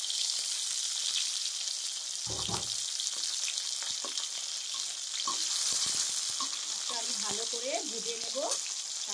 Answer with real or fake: real